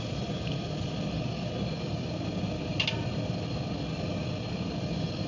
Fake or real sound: real